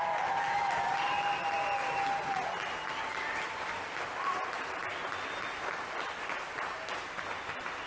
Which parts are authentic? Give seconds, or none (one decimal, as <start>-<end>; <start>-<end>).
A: 0.0-7.9